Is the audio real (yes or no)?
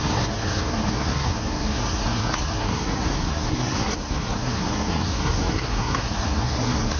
no